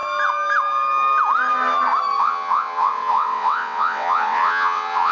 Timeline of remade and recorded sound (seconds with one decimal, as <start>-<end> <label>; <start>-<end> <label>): 0.0-2.2 recorded; 2.2-5.1 remade